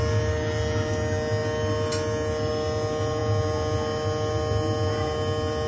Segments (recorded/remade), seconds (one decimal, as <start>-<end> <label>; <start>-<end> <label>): 0.0-5.7 recorded